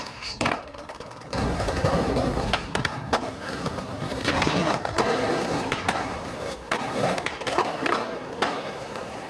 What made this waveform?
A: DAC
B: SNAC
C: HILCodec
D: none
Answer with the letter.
B